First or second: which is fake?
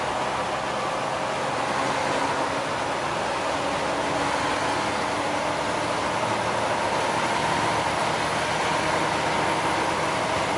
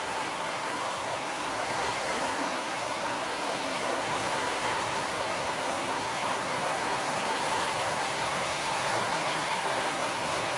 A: second